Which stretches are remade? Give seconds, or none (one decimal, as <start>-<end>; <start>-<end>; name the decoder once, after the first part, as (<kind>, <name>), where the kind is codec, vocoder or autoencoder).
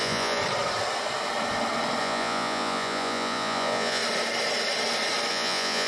0.0-0.4 (vocoder, Vocos); 2.0-4.0; 5.3-5.9